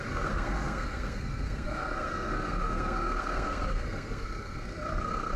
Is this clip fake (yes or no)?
yes